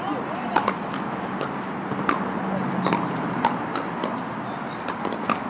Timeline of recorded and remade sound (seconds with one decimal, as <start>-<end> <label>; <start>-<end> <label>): 0.0-2.6 recorded; 2.6-3.7 remade; 3.7-5.5 recorded